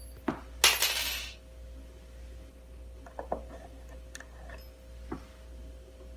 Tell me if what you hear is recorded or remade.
recorded